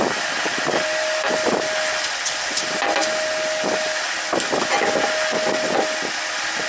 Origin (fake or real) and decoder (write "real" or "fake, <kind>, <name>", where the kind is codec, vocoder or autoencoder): real